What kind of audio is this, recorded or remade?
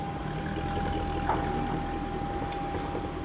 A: recorded